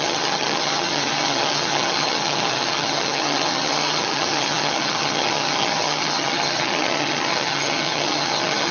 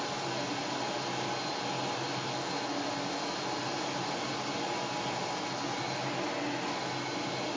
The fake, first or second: first